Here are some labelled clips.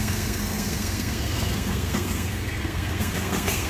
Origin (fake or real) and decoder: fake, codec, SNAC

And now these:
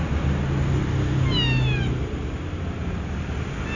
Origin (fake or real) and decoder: real